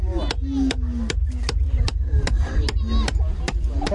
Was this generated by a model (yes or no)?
no